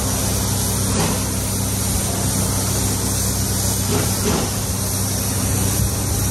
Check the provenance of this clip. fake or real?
real